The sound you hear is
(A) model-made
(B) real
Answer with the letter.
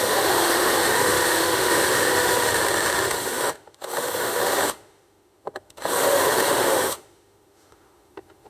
A